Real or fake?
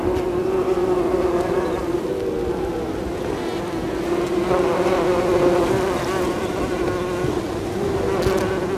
real